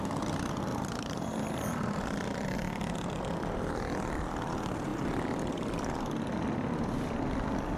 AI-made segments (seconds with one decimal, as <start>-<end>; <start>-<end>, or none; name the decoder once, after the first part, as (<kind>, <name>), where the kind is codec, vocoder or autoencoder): 0.7-3.7 (vocoder, BigVGAN v2); 4.9-5.4

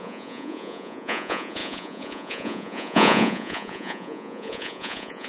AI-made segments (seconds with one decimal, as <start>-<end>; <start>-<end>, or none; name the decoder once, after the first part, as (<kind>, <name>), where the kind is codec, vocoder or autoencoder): 0.0-5.3 (vocoder, Vocos)